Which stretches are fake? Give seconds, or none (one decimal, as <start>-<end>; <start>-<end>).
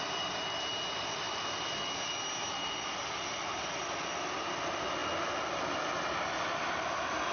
none